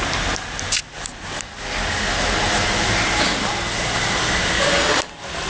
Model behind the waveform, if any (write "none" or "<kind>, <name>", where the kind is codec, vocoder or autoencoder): none